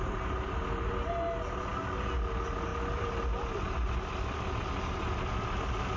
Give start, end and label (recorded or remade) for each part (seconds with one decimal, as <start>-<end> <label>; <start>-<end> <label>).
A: 0.0-6.0 recorded